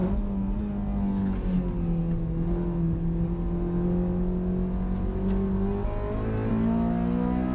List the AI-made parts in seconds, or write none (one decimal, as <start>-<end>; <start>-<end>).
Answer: none